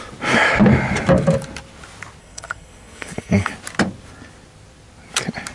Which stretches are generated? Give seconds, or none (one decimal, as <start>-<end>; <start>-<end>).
2.2-3.5